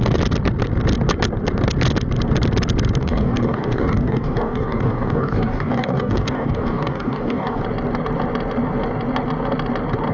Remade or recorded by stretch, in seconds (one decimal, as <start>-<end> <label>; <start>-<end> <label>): 0.0-3.0 recorded; 3.0-7.6 remade; 7.6-10.1 recorded